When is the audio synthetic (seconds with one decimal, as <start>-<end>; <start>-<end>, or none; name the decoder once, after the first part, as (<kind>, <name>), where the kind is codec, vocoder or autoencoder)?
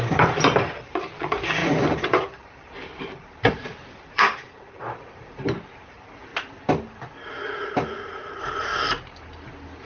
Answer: 0.0-6.3 (vocoder, BigVGAN v2); 7.6-8.7